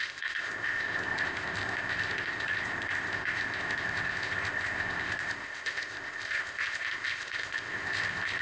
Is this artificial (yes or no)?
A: yes